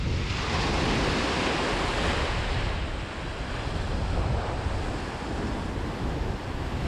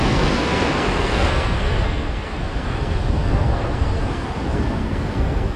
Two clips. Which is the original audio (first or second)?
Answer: first